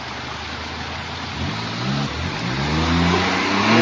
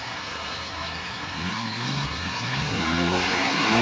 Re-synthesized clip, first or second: second